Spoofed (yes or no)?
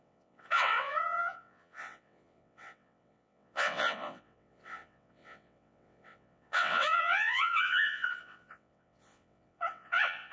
yes